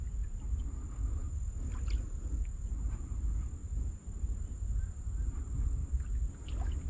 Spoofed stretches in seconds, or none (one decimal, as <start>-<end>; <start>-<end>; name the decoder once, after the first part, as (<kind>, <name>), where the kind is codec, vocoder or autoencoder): none